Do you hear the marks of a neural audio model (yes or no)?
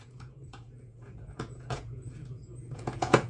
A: yes